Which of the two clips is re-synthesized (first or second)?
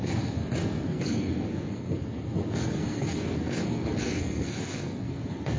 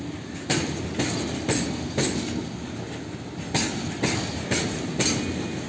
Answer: first